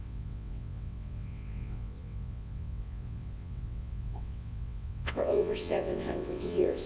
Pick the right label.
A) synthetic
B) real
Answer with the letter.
A